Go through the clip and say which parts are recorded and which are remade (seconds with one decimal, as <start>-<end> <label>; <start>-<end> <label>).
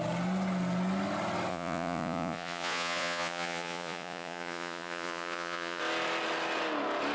0.0-1.5 recorded; 1.5-5.8 remade; 5.8-7.1 recorded